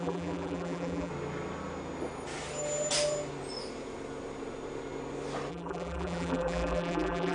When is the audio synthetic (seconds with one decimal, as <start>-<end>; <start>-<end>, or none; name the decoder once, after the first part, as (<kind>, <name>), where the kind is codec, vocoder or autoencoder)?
0.0-1.1 (vocoder, BigVGAN v2); 5.5-7.3